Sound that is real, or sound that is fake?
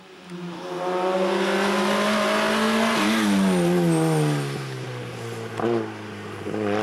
real